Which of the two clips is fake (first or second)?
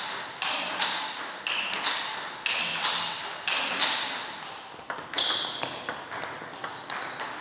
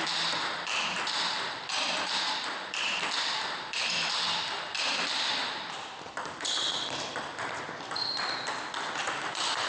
second